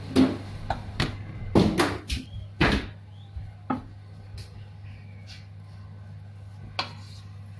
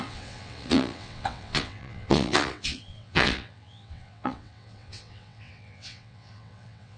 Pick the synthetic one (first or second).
second